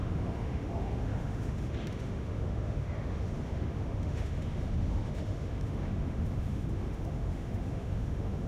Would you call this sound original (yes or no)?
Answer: no